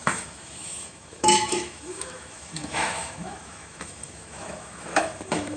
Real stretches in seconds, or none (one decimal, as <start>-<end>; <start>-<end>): none